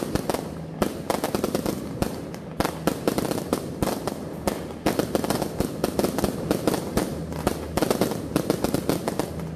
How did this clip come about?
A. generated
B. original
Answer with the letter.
B